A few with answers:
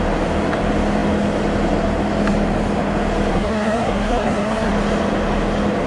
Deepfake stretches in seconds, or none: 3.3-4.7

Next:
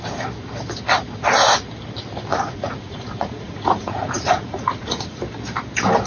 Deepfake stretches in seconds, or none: 2.3-5.2